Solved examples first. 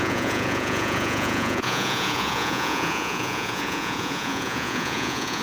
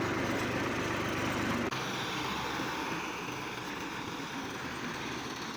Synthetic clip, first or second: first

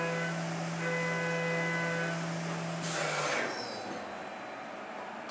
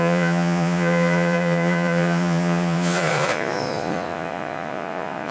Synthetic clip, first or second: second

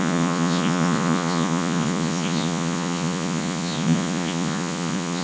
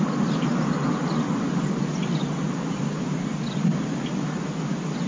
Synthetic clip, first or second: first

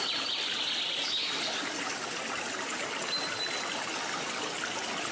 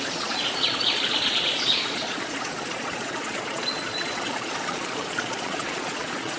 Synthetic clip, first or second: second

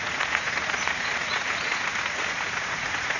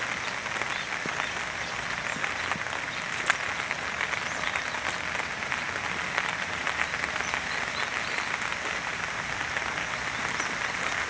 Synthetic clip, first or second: first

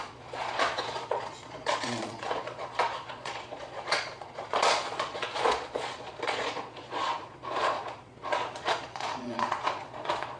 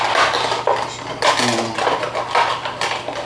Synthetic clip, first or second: first